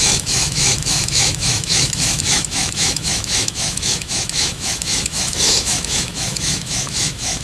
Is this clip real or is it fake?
fake